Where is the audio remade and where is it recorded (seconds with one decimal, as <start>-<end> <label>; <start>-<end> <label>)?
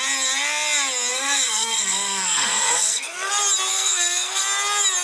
0.0-1.1 recorded; 1.1-3.3 remade; 3.3-3.7 recorded; 3.7-4.4 remade; 4.4-5.0 recorded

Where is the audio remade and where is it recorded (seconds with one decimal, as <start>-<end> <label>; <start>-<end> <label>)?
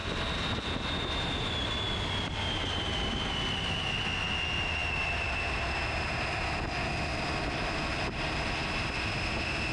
0.0-9.7 recorded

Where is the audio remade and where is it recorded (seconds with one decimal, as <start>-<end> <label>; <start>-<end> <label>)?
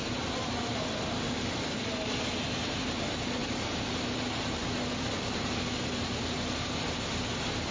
0.0-2.5 recorded; 2.5-3.4 remade; 3.4-4.0 recorded; 4.0-4.6 remade; 4.6-6.0 recorded; 6.0-7.7 remade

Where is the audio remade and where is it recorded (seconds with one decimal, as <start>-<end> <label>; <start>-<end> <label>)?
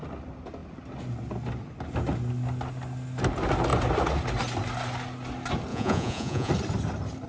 0.0-5.7 recorded; 5.7-6.5 remade; 6.5-7.3 recorded